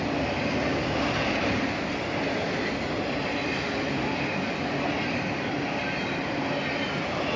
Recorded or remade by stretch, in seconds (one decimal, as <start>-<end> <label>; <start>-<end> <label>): 0.0-7.4 recorded